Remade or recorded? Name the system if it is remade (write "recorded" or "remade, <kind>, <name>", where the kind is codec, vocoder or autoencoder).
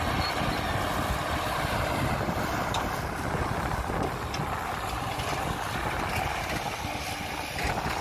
recorded